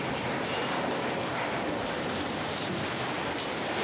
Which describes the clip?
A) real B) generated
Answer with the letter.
A